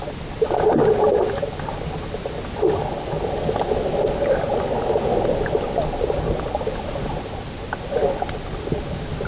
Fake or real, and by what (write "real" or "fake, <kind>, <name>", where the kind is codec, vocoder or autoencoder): real